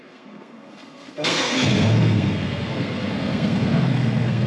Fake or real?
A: fake